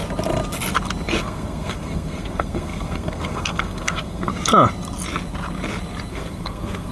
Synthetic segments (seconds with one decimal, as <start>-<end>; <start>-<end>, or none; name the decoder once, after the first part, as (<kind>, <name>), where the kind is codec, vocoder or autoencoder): 1.2-4.3 (codec, SNAC); 6.1-6.9